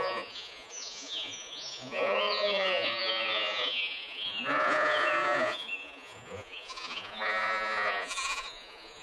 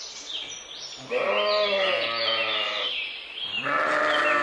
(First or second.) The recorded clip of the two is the second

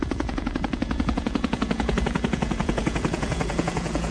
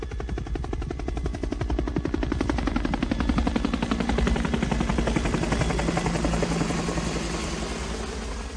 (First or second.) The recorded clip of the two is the second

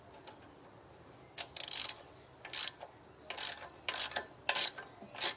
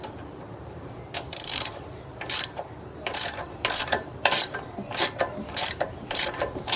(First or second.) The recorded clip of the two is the first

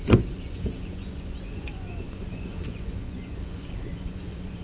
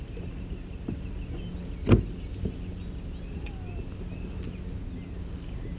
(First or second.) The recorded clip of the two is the second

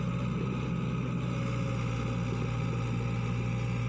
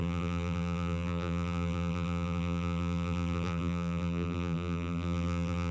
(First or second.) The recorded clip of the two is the first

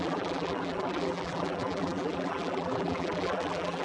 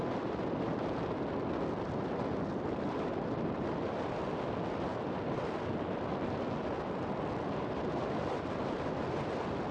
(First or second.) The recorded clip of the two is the second